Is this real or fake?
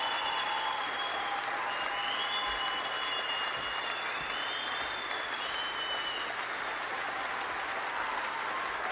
real